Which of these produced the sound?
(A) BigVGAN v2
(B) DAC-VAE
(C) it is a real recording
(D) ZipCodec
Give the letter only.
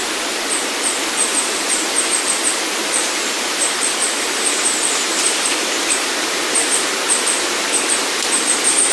A